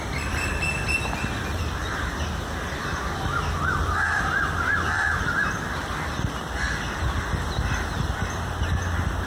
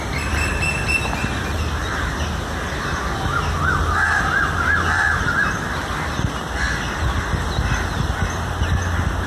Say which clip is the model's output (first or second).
first